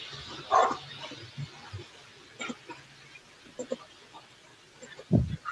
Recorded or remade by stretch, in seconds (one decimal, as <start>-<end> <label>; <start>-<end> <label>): 0.0-5.5 recorded